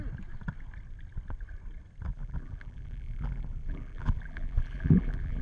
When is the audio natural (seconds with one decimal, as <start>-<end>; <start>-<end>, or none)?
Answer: 0.0-2.1